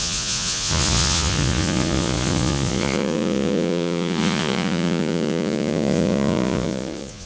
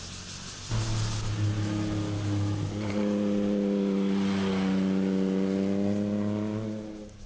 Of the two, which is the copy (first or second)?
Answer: first